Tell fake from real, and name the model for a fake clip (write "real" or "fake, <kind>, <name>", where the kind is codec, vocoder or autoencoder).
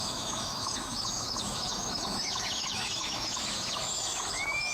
fake, autoencoder, DAC-VAE